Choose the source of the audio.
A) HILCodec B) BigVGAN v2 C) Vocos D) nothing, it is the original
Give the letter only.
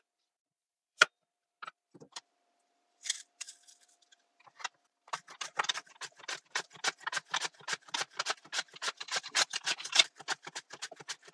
B